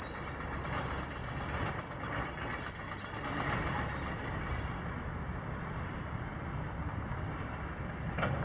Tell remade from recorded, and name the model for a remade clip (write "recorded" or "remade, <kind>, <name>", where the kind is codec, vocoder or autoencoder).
recorded